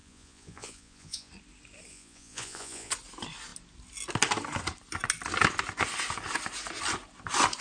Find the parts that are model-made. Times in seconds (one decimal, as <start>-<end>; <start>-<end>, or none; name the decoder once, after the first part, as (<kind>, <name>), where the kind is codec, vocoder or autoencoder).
0.0-1.3 (vocoder, Vocos); 1.9-2.9